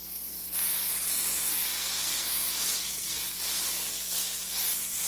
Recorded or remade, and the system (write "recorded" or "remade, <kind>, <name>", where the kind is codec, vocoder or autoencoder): remade, codec, SNAC